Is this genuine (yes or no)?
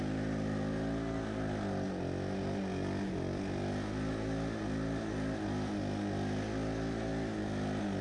yes